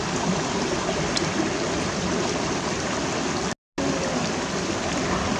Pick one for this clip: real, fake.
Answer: real